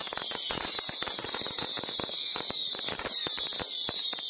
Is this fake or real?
real